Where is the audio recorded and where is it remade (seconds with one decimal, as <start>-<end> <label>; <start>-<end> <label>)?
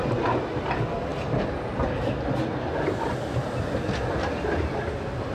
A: 0.0-5.3 recorded